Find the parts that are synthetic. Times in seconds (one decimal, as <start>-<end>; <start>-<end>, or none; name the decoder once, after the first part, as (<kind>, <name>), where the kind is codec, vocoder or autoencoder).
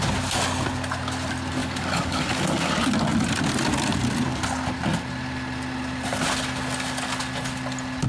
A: 1.6-2.7 (codec, DAC)